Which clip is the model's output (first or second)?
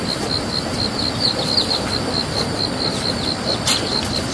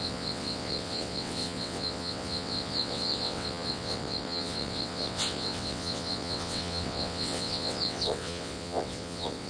second